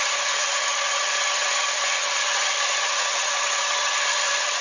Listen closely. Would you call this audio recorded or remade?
remade